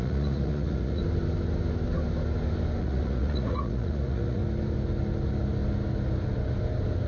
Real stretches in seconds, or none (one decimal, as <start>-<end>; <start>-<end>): 1.0-2.8; 4.4-7.1